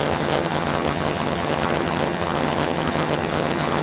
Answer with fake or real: fake